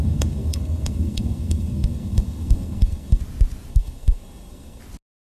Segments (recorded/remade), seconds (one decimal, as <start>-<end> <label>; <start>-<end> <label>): 0.0-3.2 remade; 3.2-3.7 recorded; 3.7-4.8 remade; 4.8-5.3 recorded